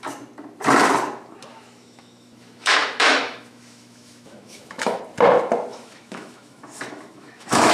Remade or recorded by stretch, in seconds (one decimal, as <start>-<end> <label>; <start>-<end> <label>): 0.0-1.5 recorded; 1.5-5.0 remade; 5.0-5.7 recorded; 5.7-7.7 remade